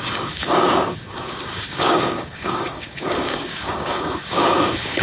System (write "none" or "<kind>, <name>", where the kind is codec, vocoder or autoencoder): codec, DAC